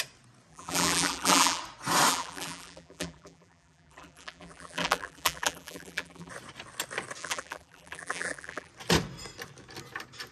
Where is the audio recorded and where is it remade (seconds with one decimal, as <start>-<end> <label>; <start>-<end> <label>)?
0.0-0.5 recorded; 0.5-1.6 remade; 1.6-2.1 recorded; 2.1-6.3 remade; 6.3-7.2 recorded; 7.2-8.7 remade; 8.7-10.3 recorded